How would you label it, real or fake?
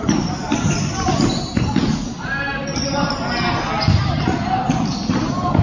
real